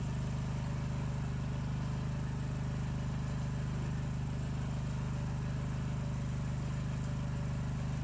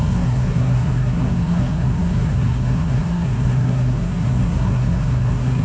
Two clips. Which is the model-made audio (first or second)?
second